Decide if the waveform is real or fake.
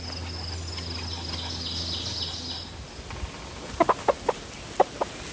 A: real